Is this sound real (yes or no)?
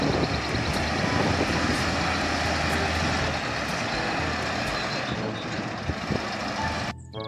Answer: yes